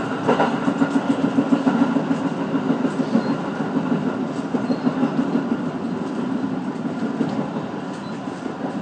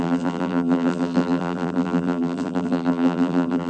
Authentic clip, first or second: first